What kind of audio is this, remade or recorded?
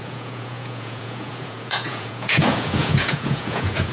remade